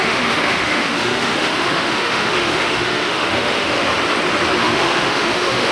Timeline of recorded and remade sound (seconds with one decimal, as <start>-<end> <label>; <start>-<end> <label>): 0.0-3.9 remade; 3.9-4.6 recorded; 4.6-5.7 remade